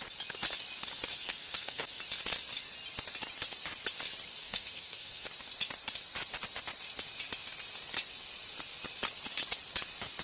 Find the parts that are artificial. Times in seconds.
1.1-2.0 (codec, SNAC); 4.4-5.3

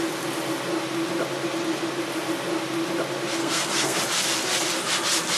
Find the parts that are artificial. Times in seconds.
3.4-4.0 (codec, SNAC)